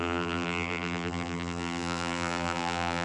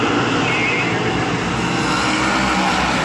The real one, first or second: second